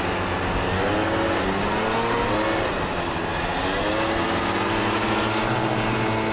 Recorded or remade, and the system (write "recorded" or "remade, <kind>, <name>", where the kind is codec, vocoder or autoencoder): recorded